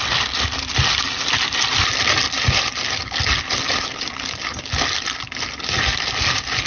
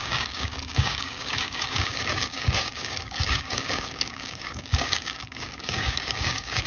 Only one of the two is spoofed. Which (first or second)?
second